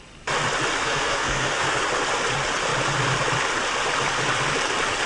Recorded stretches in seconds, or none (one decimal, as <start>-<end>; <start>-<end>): 0.0-0.8; 1.8-5.1